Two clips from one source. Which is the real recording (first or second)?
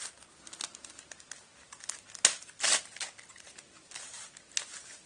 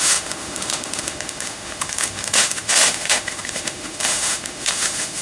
first